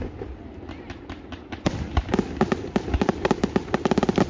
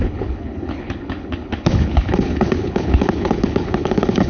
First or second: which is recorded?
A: first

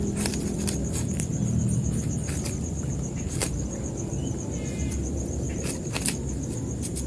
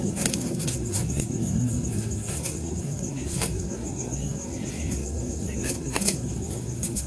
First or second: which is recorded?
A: first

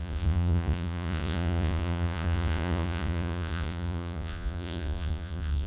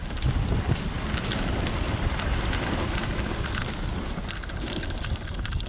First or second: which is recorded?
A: second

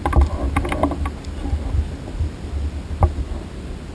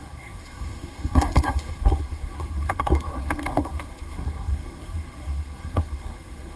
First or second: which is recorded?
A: first